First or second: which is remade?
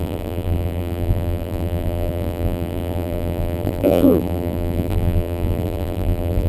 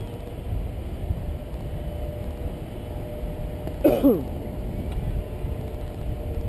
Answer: first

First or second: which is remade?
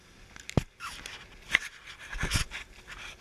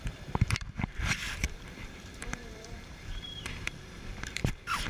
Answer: second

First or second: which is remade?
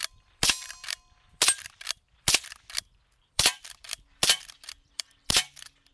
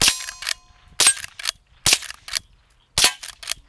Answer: first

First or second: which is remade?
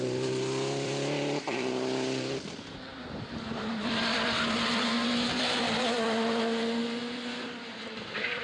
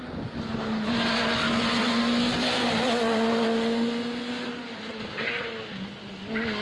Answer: first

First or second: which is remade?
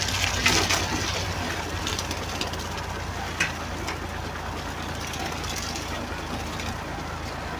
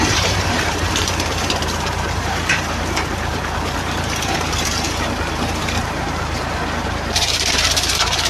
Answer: second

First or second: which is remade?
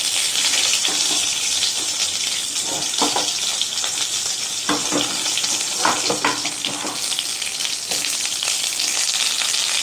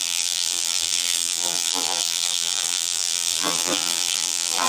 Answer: second